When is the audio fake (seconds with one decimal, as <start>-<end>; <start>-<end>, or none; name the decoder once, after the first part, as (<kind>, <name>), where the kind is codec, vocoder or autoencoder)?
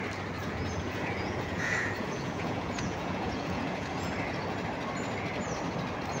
0.4-4.1 (vocoder, Vocos)